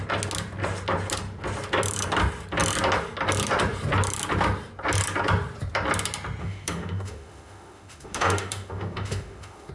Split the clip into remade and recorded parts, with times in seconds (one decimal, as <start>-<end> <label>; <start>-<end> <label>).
0.0-6.4 recorded; 6.4-9.7 remade